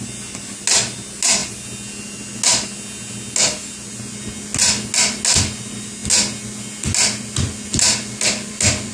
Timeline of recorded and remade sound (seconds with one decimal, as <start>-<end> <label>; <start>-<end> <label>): 0.0-8.9 recorded